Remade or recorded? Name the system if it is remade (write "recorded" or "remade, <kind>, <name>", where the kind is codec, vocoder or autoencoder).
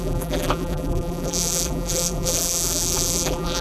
remade, vocoder, BigVGAN v2